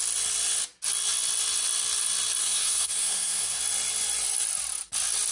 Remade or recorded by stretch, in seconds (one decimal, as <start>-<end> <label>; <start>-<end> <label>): 0.0-2.4 recorded; 2.4-3.6 remade; 3.6-5.3 recorded